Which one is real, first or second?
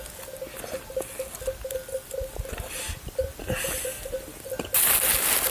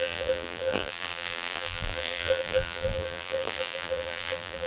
first